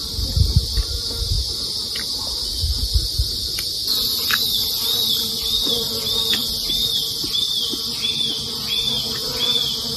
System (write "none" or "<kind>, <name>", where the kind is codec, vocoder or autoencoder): none